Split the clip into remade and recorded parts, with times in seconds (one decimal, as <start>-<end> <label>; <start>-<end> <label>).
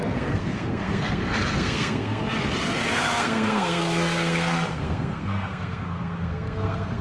0.0-2.2 remade; 2.2-2.9 recorded; 2.9-7.0 remade